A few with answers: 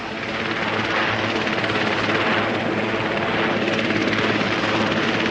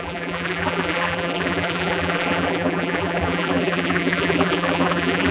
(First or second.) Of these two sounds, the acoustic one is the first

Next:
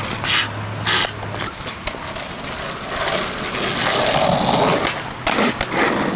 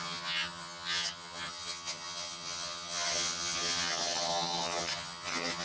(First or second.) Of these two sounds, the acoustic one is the first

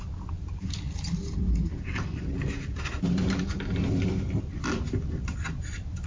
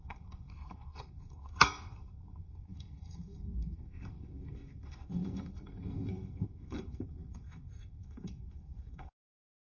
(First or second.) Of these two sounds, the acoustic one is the first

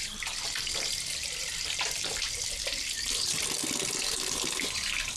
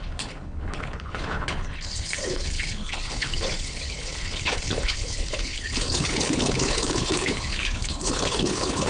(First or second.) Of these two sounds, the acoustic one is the first